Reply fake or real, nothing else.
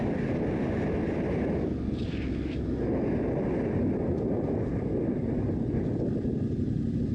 real